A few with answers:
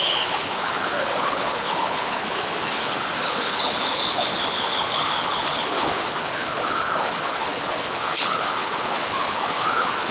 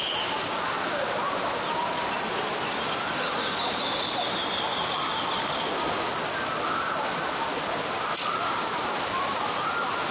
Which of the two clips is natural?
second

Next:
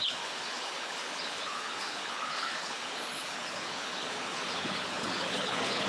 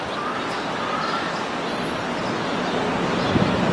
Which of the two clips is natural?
second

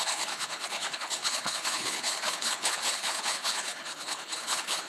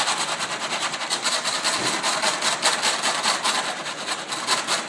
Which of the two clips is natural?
second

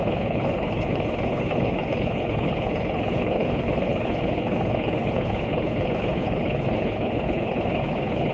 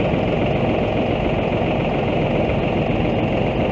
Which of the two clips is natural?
second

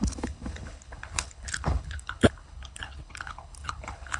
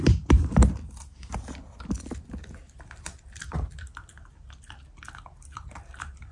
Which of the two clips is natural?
second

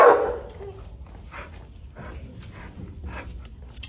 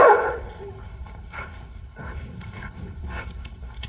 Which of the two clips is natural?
first